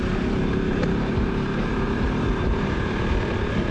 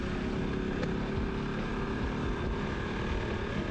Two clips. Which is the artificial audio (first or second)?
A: first